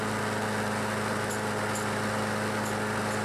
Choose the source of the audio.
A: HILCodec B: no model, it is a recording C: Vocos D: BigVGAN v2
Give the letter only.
B